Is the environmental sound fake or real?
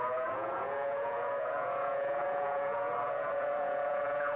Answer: fake